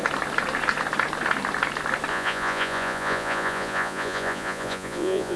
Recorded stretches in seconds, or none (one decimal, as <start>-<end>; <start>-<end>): 0.0-2.1